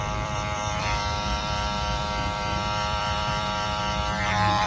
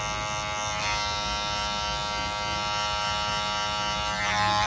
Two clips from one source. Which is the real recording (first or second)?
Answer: second